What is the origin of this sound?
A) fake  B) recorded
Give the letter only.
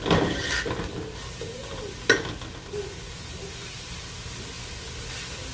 B